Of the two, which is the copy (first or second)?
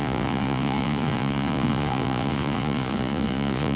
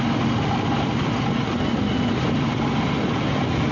first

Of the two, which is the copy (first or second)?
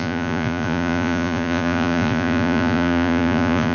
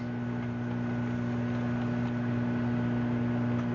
first